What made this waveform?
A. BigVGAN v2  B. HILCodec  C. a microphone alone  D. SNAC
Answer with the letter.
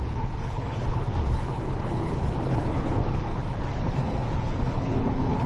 B